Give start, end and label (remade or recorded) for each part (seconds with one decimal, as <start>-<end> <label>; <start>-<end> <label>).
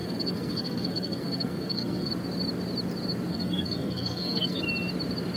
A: 0.0-2.1 remade; 2.1-3.3 recorded; 3.3-4.6 remade; 4.6-5.4 recorded